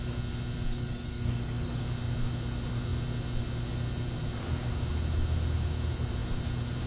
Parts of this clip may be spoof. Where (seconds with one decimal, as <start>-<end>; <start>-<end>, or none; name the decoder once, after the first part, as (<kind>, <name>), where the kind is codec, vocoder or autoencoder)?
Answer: 0.7-1.8 (codec, DAC)